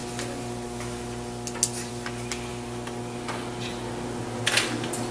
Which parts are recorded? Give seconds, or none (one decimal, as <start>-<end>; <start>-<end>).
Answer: 0.0-5.1